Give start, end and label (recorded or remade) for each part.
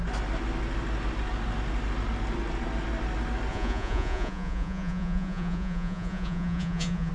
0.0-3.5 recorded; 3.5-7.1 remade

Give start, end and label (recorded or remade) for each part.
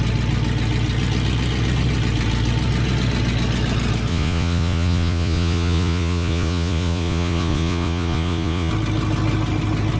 0.0-4.1 recorded; 4.1-8.7 remade; 8.7-10.0 recorded